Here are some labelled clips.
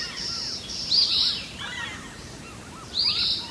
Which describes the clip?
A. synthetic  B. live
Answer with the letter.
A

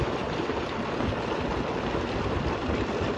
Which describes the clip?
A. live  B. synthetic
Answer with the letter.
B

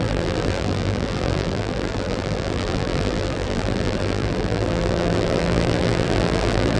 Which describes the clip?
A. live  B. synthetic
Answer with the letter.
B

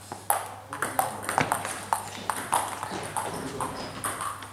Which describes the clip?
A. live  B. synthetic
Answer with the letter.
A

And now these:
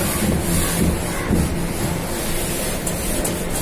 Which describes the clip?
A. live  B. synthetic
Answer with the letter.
A